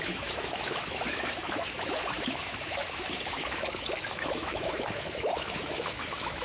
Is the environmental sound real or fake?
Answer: fake